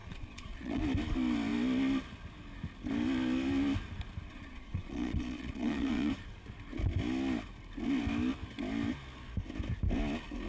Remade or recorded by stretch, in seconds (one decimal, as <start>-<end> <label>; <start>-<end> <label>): 0.0-0.8 remade; 0.8-4.3 recorded; 4.3-6.1 remade; 6.1-10.5 recorded